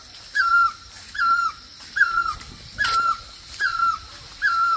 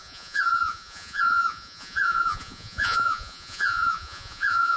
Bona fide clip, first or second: first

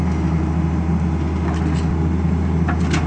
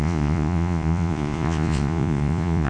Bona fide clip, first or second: first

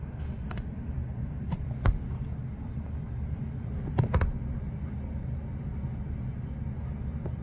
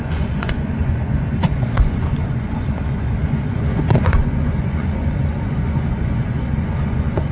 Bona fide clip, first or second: first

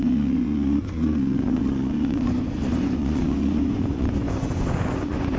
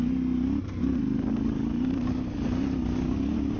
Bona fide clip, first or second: second